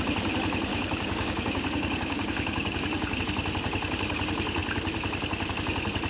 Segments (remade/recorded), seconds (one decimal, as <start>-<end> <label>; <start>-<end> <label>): 0.0-0.7 recorded; 0.7-3.2 remade; 3.2-6.1 recorded